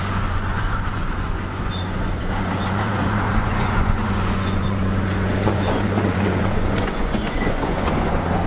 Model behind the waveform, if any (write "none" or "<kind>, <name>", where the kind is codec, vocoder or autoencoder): vocoder, Vocos